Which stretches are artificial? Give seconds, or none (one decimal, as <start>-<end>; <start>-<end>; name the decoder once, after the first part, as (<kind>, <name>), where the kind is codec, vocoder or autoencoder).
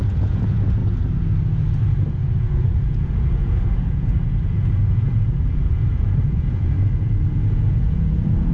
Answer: 0.0-0.8 (vocoder, Vocos); 2.1-8.5